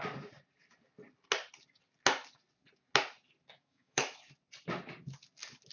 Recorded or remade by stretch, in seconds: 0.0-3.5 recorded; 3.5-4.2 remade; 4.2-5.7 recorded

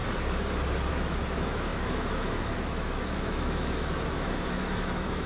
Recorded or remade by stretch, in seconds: 0.0-0.9 recorded; 0.9-5.3 remade

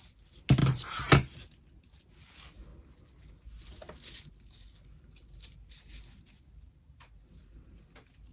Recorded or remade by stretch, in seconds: 0.0-8.3 recorded

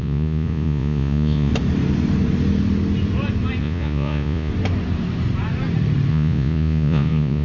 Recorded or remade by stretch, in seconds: 0.0-1.5 remade; 1.5-3.6 recorded; 3.6-4.5 remade; 4.5-6.1 recorded; 6.1-7.4 remade

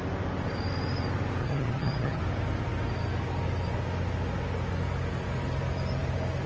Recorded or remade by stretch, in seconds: 0.0-1.4 recorded; 1.4-2.2 remade; 2.2-6.5 recorded

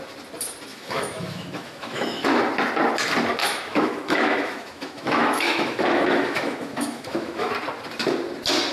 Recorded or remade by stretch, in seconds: 0.0-0.7 recorded; 0.7-2.4 remade; 2.4-3.4 recorded; 3.4-7.5 remade; 7.5-8.7 recorded